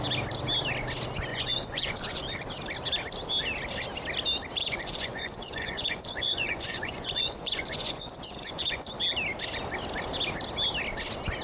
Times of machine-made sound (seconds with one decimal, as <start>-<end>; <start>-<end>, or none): 1.3-2.2; 4.6-8.9